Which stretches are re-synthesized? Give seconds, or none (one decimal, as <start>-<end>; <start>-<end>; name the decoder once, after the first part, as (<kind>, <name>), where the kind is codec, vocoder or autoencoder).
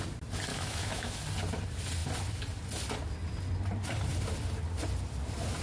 0.5-1.2 (autoencoder, DAC-VAE)